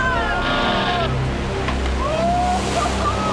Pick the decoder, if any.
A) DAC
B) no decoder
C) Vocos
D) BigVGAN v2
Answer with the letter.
B